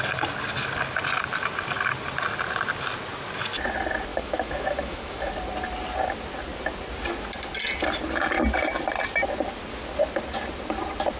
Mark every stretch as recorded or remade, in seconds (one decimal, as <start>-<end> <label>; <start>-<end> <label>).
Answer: 0.0-4.1 recorded; 4.1-5.3 remade; 5.3-11.2 recorded